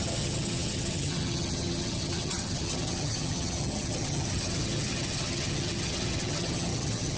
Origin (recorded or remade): remade